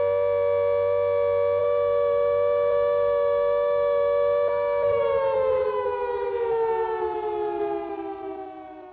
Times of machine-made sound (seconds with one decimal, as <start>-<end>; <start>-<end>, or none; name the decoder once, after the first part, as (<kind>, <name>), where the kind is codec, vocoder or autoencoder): 1.6-6.3 (autoencoder, DAC-VAE)